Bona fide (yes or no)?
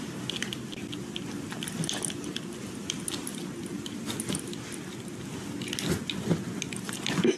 yes